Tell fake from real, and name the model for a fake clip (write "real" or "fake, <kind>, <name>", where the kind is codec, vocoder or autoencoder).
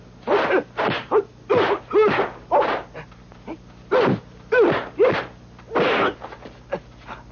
real